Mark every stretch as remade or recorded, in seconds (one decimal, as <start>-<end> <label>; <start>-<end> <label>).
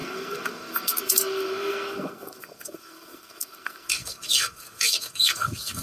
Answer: 0.0-5.8 remade